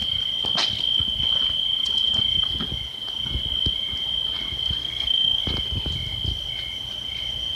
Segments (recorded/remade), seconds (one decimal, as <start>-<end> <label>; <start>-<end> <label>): 0.0-4.8 recorded; 4.8-5.4 remade; 5.4-7.5 recorded